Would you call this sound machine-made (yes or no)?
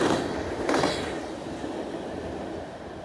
no